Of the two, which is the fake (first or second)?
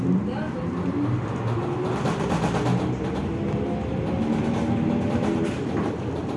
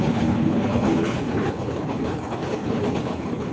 second